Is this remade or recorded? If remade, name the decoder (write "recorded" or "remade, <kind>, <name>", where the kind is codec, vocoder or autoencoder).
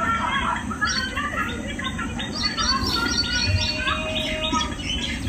remade, vocoder, BigVGAN v2